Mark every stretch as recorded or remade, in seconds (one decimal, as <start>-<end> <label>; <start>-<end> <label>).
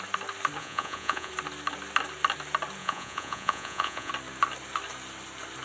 0.0-0.6 recorded; 0.6-1.3 remade; 1.3-2.8 recorded; 2.8-4.1 remade; 4.1-5.6 recorded